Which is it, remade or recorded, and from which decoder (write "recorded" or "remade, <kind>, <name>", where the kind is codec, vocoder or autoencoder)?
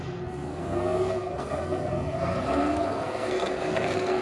remade, codec, SNAC